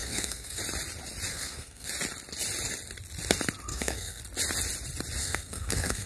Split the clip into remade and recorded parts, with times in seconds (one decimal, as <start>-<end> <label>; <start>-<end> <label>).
0.0-0.6 remade; 0.6-1.3 recorded; 1.3-1.9 remade; 1.9-3.7 recorded; 3.7-4.2 remade; 4.2-5.2 recorded; 5.2-6.1 remade